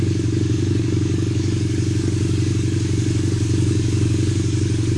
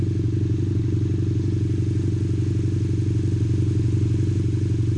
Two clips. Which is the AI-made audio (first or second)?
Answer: first